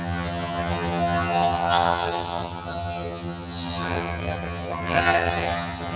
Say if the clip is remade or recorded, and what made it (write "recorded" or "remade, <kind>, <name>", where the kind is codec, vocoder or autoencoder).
remade, vocoder, HiFi-GAN